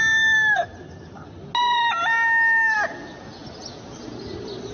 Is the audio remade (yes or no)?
no